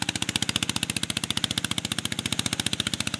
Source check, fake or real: real